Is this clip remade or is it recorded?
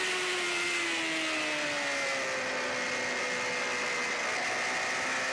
recorded